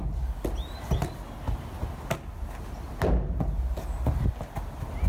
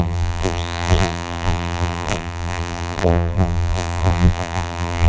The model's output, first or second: second